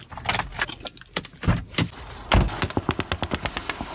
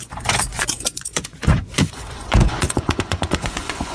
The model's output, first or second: second